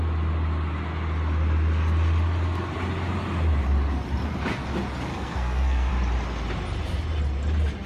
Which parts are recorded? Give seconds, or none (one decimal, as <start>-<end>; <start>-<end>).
0.0-5.1; 5.9-7.9